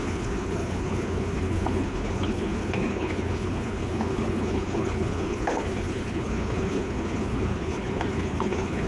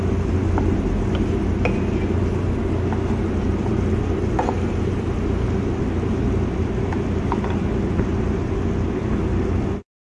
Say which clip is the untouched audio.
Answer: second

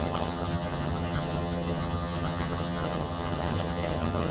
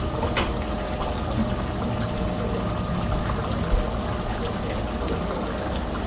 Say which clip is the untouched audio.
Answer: second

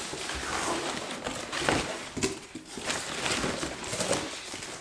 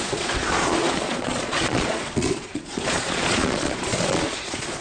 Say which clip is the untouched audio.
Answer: first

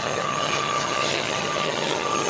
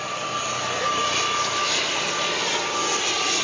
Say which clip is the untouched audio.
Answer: second